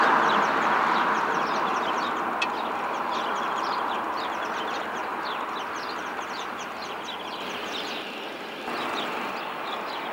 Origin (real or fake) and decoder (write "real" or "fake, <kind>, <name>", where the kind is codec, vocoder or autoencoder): real